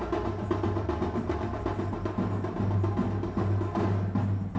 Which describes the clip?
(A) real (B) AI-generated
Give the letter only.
A